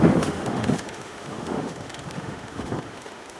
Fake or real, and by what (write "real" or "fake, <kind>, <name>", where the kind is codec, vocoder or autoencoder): fake, autoencoder, DAC-VAE